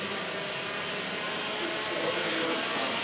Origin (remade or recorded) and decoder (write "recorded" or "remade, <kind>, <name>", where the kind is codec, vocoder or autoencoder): recorded